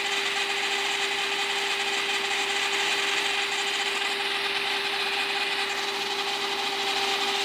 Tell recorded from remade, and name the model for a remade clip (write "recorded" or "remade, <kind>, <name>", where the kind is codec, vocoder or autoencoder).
recorded